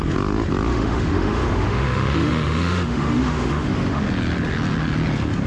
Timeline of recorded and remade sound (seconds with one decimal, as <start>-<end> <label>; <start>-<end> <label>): 0.0-0.7 recorded; 0.7-4.0 remade; 4.0-5.5 recorded